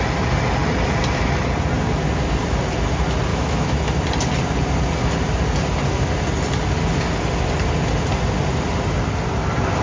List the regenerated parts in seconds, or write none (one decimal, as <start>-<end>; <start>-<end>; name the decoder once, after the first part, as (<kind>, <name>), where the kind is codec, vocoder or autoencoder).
3.3-3.8 (autoencoder, DAC-VAE)